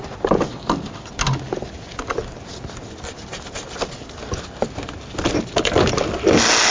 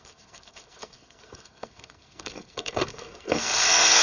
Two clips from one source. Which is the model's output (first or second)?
second